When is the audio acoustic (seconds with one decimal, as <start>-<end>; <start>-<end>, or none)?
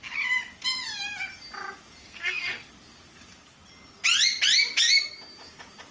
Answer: 0.0-2.0; 2.7-5.9